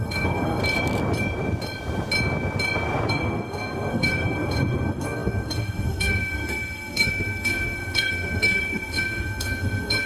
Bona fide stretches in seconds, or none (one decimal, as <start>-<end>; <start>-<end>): 0.6-3.1

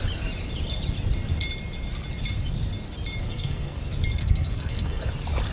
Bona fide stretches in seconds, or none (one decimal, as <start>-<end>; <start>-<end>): 0.0-3.2; 3.8-4.2; 5.1-5.5